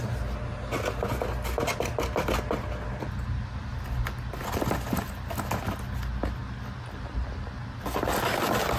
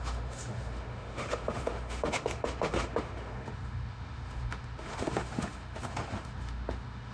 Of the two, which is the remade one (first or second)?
second